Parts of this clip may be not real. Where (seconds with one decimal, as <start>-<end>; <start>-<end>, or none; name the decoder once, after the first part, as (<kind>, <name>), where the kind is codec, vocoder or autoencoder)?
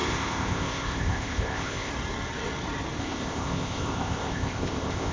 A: 0.0-1.9 (codec, ZipCodec); 3.0-5.1